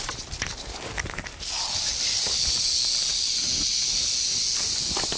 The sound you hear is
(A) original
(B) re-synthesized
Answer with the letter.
A